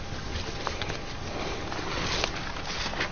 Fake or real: real